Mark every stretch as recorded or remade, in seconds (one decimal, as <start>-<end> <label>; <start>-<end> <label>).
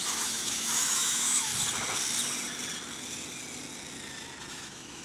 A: 0.0-1.5 remade; 1.5-4.5 recorded; 4.5-5.0 remade